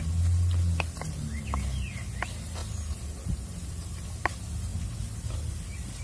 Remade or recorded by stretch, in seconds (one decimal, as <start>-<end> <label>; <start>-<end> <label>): 0.0-6.0 recorded